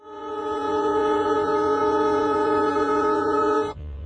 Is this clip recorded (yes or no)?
no